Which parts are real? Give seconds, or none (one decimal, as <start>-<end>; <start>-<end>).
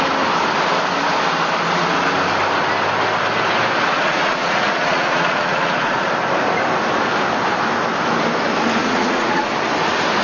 0.0-3.9; 6.1-8.8; 9.5-10.2